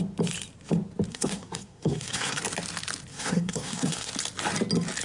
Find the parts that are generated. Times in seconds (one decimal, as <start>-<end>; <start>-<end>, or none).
1.1-2.4; 3.1-4.1